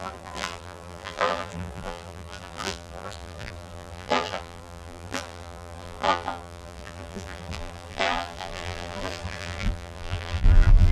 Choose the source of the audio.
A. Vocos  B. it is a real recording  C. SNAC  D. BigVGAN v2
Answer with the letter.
D